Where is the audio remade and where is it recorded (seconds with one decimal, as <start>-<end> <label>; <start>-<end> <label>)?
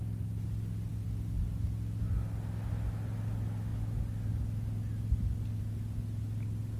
0.0-6.8 recorded